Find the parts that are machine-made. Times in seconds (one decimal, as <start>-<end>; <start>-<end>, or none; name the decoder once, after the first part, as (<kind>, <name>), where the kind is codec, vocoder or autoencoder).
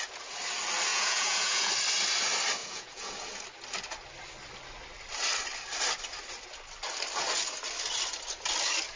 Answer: 0.9-1.7 (vocoder, Vocos); 2.6-3.1